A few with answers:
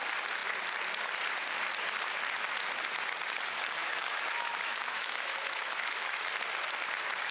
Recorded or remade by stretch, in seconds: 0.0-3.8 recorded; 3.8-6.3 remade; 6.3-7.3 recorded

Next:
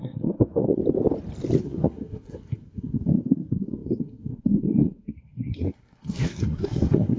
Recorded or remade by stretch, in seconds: 0.0-0.8 remade; 0.8-1.6 recorded; 1.6-7.2 remade

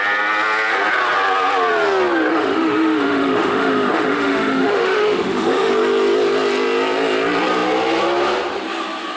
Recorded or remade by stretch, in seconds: 0.0-2.3 recorded; 2.3-5.7 remade; 5.7-9.2 recorded